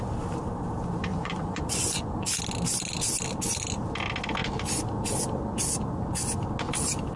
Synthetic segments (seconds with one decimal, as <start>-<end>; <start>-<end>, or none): 1.1-2.3